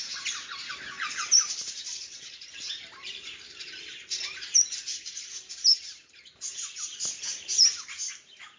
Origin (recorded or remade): remade